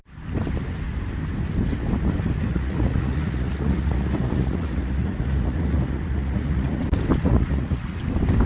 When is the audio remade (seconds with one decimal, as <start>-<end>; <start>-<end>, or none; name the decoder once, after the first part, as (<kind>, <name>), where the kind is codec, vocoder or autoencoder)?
2.5-6.8 (vocoder, Vocos); 7.2-8.0

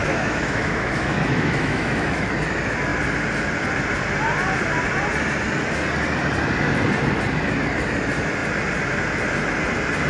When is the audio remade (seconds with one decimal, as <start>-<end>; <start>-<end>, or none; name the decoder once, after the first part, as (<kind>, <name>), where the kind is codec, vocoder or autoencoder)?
0.0-2.3 (autoencoder, DAC-VAE)

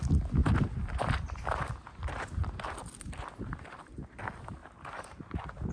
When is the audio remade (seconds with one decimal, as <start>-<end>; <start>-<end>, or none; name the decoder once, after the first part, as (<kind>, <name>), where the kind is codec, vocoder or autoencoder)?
0.4-3.8 (vocoder, BigVGAN v2); 4.6-5.7

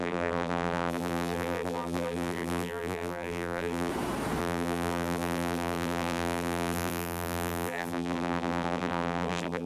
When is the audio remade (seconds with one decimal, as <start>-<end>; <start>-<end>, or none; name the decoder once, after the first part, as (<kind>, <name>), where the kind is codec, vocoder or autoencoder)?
0.0-3.9 (vocoder, BigVGAN v2); 4.4-9.7